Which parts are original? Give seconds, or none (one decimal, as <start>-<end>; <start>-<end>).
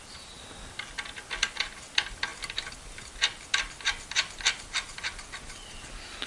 0.0-6.3